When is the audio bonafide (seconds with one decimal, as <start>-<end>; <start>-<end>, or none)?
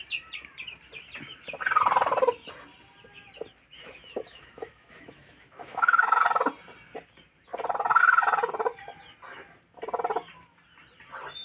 0.0-3.8; 6.2-11.4